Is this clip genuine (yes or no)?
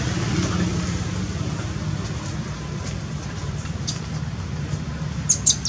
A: yes